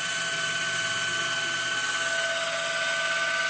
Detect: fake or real real